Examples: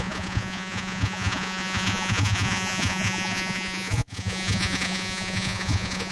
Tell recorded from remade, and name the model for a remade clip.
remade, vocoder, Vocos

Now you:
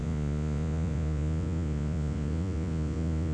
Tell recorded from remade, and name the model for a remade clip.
remade, vocoder, Vocos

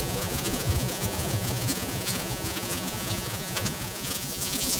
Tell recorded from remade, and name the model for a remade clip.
remade, vocoder, Vocos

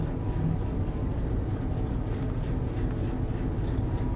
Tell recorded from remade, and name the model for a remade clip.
recorded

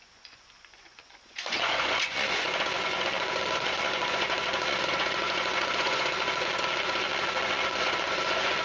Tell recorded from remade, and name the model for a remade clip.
remade, vocoder, Vocos